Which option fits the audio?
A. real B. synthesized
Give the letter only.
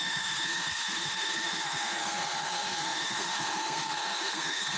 B